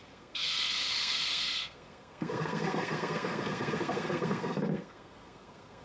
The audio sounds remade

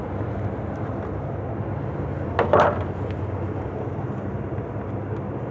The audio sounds recorded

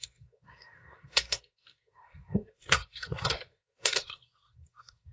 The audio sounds remade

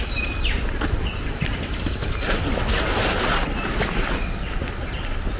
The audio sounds recorded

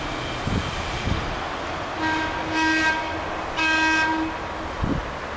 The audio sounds recorded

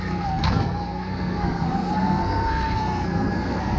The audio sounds remade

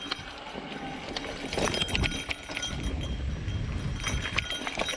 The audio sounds recorded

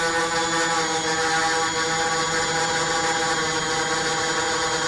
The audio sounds recorded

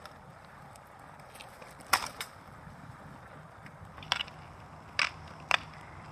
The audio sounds recorded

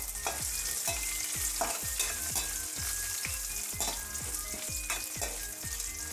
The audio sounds recorded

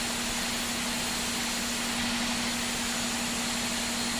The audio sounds recorded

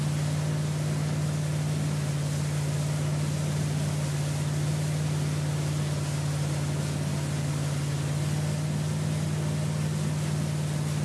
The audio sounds recorded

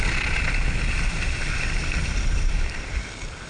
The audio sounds recorded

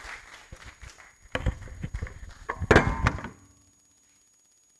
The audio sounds recorded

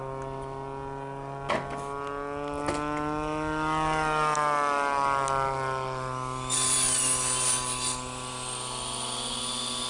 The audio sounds recorded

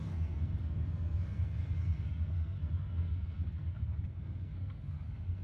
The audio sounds remade